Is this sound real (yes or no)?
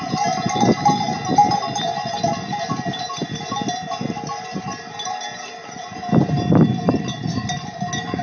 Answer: yes